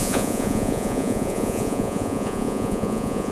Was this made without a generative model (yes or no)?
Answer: no